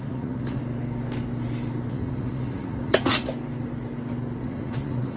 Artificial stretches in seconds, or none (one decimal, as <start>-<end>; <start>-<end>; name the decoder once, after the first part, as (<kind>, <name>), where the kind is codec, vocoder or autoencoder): 0.0-0.6 (vocoder, Vocos); 1.9-3.3; 4.4-5.2